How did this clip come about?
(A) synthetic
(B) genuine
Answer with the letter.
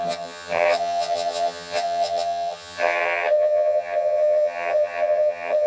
A